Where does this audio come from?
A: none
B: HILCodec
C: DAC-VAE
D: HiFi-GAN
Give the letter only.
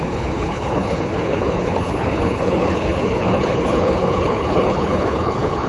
B